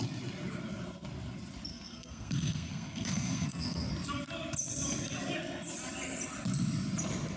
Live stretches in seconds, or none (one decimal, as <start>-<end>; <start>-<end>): 0.0-1.7; 3.9-7.4